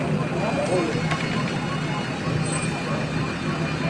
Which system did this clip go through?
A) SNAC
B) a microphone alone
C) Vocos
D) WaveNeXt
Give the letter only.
B